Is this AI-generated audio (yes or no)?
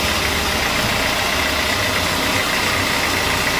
no